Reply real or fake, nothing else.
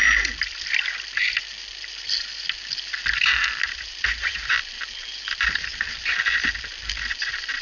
real